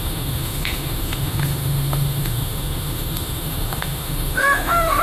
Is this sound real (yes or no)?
no